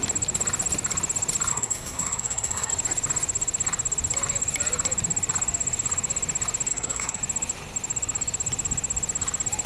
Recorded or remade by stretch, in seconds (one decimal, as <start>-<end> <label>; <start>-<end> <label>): 0.0-1.5 recorded; 1.5-2.7 remade; 2.7-6.7 recorded; 6.7-7.2 remade; 7.2-9.7 recorded